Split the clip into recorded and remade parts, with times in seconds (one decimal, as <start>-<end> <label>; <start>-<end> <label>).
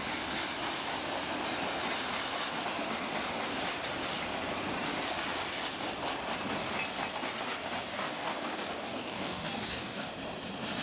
0.0-7.9 recorded; 7.9-10.1 remade; 10.1-10.8 recorded